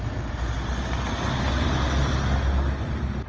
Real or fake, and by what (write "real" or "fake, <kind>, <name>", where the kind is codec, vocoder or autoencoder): real